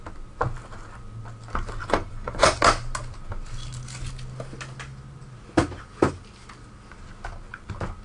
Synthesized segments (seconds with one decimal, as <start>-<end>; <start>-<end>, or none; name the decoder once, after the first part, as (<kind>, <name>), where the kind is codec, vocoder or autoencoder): 1.8-2.6 (vocoder, Vocos)